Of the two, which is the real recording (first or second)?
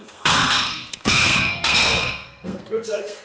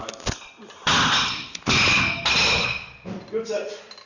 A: second